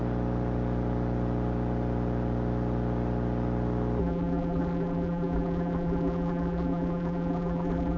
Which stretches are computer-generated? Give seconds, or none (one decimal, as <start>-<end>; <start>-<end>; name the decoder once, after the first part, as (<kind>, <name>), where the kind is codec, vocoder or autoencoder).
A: 4.0-8.0 (vocoder, BigVGAN v2)